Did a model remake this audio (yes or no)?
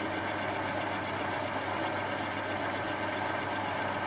no